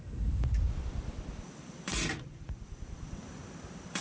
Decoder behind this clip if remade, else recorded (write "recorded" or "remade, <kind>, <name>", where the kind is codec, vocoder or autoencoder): remade, vocoder, BigVGAN v2